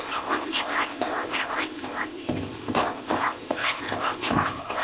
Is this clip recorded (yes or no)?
no